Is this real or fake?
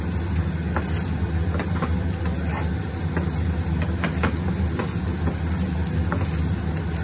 real